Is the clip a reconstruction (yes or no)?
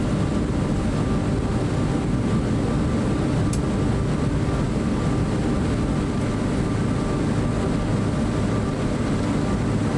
no